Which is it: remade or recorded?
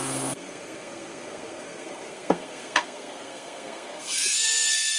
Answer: remade